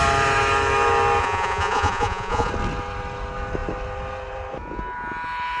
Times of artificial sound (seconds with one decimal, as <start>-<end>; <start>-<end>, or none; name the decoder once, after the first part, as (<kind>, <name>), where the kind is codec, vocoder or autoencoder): 1.2-2.5 (vocoder, Vocos)